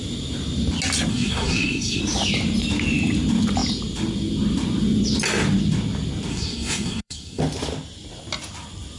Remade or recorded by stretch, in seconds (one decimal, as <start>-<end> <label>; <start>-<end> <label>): 0.0-1.1 recorded; 1.1-2.0 remade; 2.0-6.3 recorded; 6.3-7.4 remade; 7.4-9.0 recorded

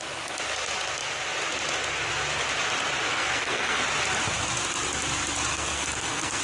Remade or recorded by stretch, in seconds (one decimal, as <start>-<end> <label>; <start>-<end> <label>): 0.0-3.1 recorded; 3.1-3.8 remade; 3.8-5.5 recorded; 5.5-6.4 remade

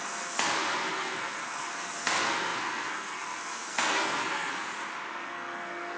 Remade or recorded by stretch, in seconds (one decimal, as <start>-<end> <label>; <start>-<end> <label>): 0.0-4.6 remade; 4.6-5.1 recorded; 5.1-6.0 remade

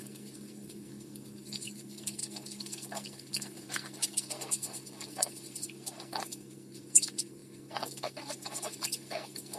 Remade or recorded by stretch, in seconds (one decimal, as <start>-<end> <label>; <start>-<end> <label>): 0.0-9.6 remade

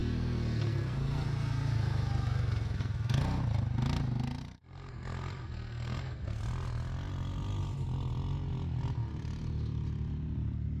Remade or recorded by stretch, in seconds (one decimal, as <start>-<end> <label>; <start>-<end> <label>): 0.0-3.4 remade; 3.4-4.4 recorded; 4.4-6.4 remade; 6.4-10.8 recorded